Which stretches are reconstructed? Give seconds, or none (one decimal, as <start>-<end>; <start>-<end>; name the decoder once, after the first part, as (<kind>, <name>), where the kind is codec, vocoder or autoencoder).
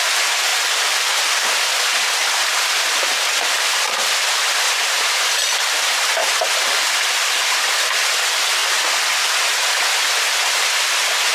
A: none